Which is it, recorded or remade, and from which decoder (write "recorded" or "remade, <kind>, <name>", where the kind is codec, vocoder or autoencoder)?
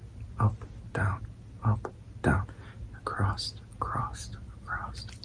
recorded